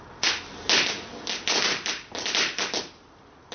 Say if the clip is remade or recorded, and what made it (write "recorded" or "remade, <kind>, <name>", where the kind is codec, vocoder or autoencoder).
recorded